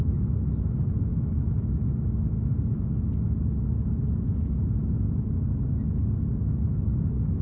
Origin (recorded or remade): recorded